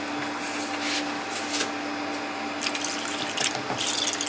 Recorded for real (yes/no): yes